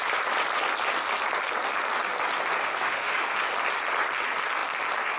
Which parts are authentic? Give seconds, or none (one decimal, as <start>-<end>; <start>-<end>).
0.0-2.6; 3.3-5.2